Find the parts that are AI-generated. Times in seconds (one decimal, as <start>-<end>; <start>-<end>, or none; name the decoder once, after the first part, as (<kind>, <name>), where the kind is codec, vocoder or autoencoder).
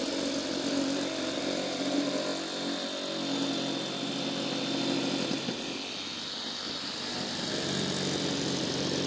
0.0-2.3 (vocoder, BigVGAN v2); 6.8-9.1